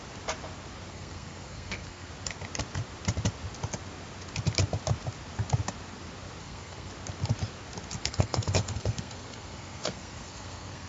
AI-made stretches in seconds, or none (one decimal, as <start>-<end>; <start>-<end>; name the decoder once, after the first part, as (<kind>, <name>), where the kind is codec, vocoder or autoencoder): 0.9-2.1 (codec, SNAC); 6.4-6.9; 8.0-10.9